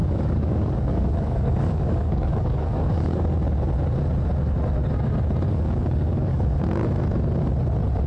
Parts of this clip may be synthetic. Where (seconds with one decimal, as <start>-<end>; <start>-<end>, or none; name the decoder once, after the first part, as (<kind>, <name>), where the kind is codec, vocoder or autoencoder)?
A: 0.0-3.3 (codec, DAC); 5.5-6.6